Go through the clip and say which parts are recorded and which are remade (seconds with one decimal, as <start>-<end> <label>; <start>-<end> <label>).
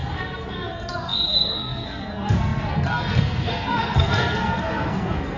0.0-5.4 remade